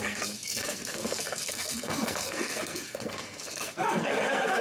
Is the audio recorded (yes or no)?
no